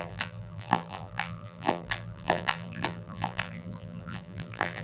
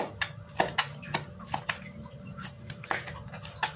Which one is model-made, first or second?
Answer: first